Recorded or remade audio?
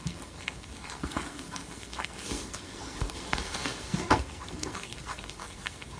remade